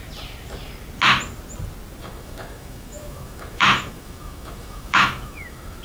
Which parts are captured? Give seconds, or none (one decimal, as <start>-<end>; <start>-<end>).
0.0-2.0